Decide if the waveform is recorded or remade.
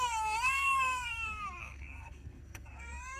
remade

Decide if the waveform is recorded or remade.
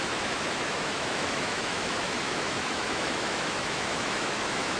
remade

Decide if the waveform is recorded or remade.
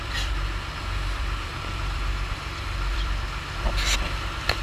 remade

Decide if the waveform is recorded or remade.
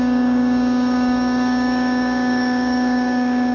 remade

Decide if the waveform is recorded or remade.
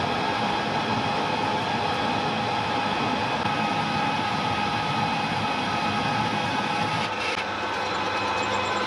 recorded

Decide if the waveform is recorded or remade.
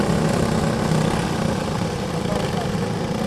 recorded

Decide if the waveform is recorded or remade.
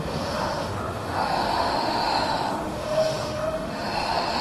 remade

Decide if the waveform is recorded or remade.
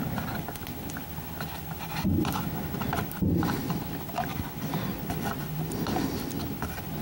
recorded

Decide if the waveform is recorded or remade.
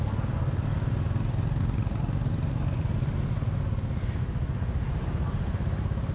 recorded